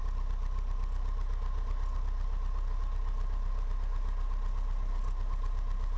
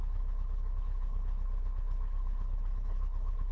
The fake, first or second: second